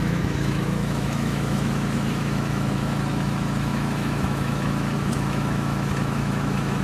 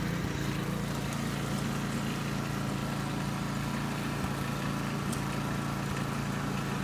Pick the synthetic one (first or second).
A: first